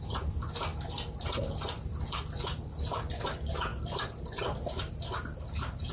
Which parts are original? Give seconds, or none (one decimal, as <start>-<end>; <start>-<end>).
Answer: 0.0-5.9